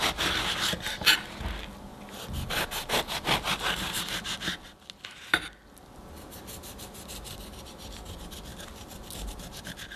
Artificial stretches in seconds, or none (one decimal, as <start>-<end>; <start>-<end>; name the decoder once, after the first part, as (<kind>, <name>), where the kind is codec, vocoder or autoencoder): none